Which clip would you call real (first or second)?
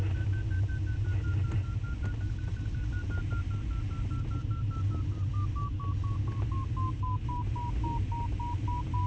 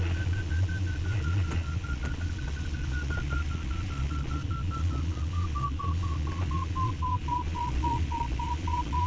first